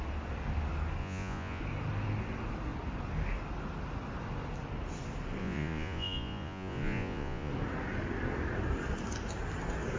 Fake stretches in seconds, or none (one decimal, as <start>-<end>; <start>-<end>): 1.0-1.6; 5.4-7.5